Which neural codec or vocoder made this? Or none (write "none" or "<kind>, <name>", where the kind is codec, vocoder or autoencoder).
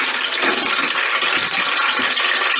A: none